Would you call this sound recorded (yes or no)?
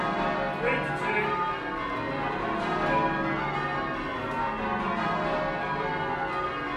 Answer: yes